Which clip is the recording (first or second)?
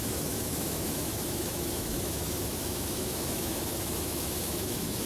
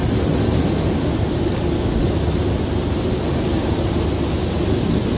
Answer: second